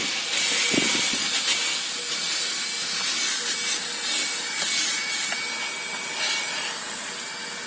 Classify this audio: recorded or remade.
recorded